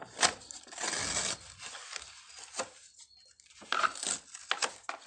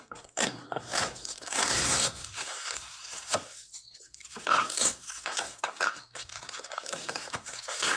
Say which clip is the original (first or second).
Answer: first